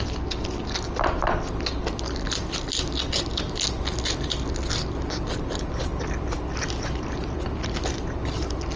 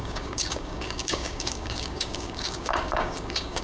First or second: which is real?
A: first